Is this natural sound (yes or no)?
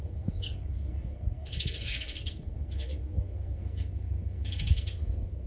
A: no